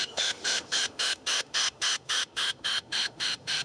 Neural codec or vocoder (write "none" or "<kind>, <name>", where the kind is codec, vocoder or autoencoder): autoencoder, DAC-VAE